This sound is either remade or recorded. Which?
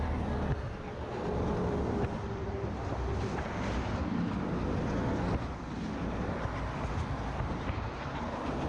recorded